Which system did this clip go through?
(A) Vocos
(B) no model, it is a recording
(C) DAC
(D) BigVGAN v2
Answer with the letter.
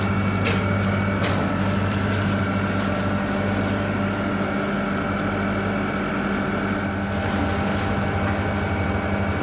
B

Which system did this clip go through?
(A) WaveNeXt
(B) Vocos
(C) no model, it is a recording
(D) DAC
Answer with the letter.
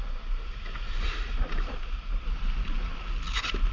C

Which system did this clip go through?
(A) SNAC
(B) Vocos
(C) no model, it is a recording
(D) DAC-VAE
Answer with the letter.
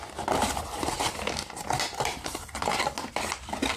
C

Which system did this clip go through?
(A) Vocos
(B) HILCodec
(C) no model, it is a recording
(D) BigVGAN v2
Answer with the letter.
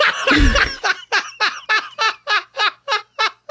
C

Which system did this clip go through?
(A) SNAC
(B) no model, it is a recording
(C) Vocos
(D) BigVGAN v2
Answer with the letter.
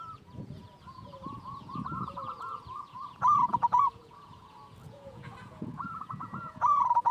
C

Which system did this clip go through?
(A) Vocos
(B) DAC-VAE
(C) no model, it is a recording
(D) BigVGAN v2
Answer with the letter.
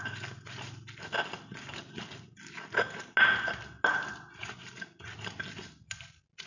C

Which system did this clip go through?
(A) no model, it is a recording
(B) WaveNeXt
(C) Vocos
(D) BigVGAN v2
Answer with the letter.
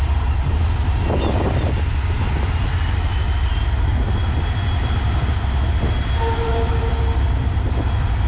A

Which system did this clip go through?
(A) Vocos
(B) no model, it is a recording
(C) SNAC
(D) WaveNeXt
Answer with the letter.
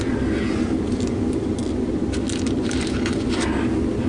B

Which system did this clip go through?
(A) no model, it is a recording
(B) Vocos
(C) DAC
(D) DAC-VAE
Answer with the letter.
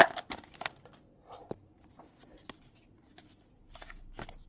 A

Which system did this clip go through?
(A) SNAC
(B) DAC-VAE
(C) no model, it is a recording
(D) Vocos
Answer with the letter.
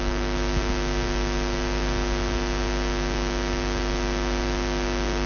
C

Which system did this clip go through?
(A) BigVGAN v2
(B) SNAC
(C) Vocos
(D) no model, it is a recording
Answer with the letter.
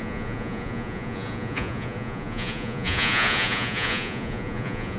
C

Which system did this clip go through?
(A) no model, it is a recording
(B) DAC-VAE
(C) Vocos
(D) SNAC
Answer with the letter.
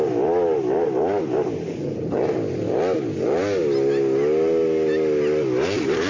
A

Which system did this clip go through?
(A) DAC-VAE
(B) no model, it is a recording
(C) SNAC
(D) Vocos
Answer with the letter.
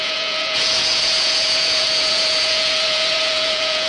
D